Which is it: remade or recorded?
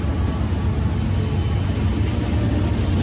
recorded